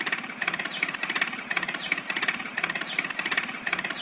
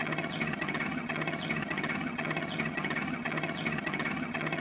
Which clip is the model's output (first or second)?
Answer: second